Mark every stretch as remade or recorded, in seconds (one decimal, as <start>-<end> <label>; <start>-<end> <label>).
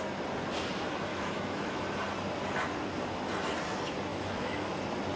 0.0-1.1 recorded; 1.1-1.8 remade; 1.8-4.1 recorded; 4.1-4.8 remade; 4.8-5.2 recorded